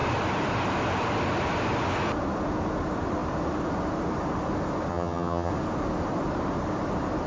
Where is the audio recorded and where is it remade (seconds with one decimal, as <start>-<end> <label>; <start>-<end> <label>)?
0.0-4.9 recorded; 4.9-5.5 remade; 5.5-7.3 recorded